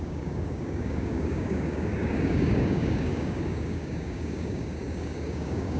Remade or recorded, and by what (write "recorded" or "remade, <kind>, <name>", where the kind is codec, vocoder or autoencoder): remade, codec, DAC